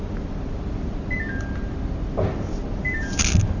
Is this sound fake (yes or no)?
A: no